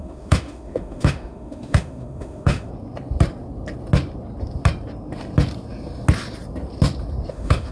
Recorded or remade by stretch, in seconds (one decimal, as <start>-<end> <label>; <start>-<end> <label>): 0.0-2.7 remade; 2.7-7.3 recorded; 7.3-7.7 remade